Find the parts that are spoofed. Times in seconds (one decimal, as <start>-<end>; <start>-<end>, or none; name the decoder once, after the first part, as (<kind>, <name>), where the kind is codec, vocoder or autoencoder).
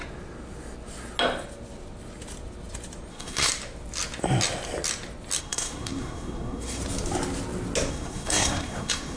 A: 3.1-3.5 (codec, SNAC); 5.4-6.8; 7.9-9.2